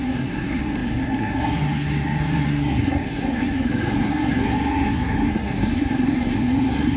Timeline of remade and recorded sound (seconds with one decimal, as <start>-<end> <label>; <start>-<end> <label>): 0.0-7.0 remade